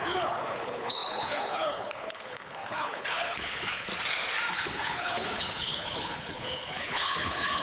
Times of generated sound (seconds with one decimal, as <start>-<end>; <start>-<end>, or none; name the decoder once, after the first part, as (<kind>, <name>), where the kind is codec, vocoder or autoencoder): 0.0-3.9 (codec, HILCodec); 4.5-7.6